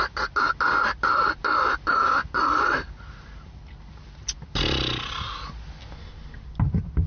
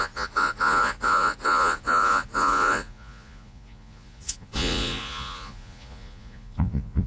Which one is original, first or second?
first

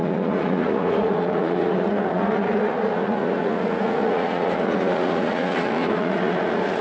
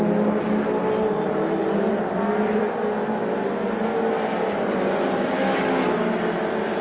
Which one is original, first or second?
second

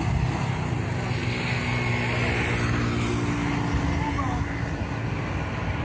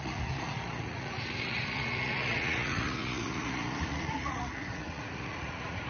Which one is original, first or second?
first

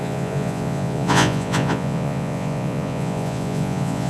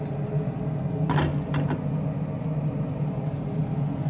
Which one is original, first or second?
second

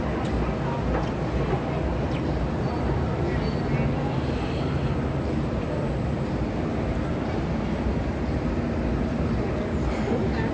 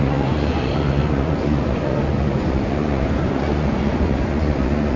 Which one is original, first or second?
first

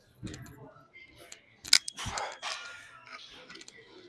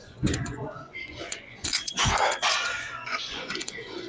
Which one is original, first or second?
first